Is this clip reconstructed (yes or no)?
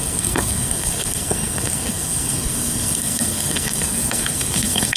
yes